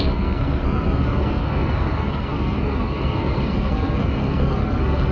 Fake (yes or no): yes